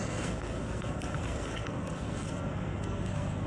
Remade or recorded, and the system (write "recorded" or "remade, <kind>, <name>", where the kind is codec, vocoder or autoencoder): remade, codec, SNAC